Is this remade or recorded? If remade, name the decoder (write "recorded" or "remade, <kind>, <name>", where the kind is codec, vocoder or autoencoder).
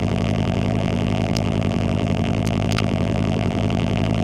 remade, vocoder, BigVGAN v2